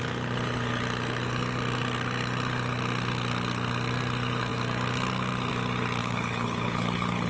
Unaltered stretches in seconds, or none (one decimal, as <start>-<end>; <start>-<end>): 0.0-6.0